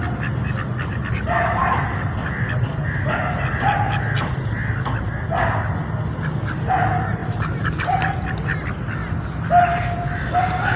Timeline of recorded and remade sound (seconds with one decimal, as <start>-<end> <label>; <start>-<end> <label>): 0.0-7.2 recorded; 7.2-7.8 remade; 7.8-10.8 recorded